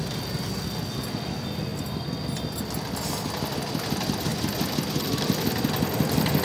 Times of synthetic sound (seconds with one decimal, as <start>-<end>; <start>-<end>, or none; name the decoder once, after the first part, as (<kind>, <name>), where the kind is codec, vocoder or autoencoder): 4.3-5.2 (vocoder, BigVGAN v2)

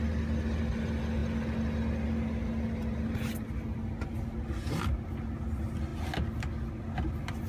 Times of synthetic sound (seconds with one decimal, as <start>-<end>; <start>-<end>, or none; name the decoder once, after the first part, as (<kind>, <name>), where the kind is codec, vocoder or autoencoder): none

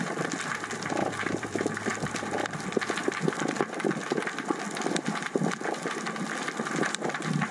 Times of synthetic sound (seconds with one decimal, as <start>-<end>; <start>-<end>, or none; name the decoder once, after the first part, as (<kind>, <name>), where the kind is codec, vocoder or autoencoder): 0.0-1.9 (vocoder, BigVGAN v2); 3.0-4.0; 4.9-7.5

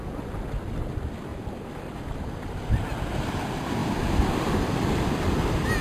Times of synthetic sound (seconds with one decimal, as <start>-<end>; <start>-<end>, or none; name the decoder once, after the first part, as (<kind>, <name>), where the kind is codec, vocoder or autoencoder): 1.3-2.0 (vocoder, BigVGAN v2); 3.8-4.7